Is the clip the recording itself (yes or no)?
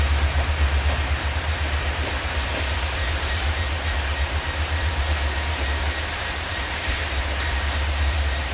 no